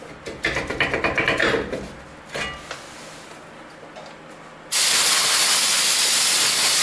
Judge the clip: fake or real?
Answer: real